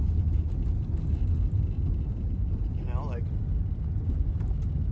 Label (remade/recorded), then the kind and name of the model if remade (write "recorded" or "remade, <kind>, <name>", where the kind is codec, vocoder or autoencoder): recorded